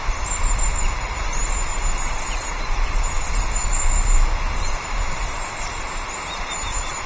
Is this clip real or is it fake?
real